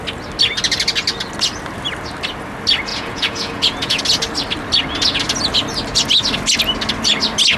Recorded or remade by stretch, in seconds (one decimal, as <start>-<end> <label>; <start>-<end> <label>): 0.0-2.9 recorded; 2.9-4.0 remade; 4.0-7.6 recorded